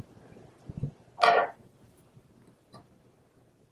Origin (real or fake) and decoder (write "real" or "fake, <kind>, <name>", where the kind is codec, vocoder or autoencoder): real